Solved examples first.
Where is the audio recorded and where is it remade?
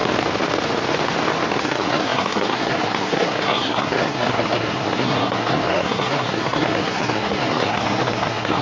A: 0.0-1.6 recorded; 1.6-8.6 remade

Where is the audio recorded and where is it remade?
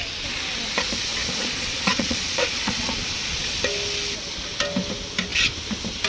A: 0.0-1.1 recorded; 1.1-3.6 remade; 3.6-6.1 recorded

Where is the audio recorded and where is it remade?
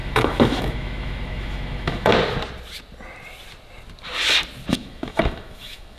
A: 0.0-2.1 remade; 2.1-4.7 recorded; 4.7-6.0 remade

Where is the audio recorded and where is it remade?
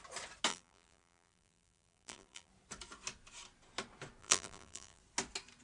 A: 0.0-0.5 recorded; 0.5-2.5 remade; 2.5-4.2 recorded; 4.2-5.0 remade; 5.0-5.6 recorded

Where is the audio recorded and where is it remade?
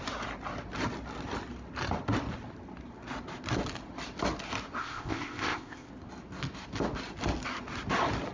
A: 0.0-4.8 recorded; 4.8-5.9 remade; 5.9-8.3 recorded